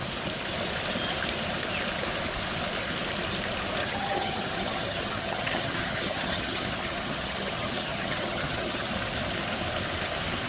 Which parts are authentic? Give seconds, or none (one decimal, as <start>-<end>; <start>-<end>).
0.0-3.8; 8.9-10.5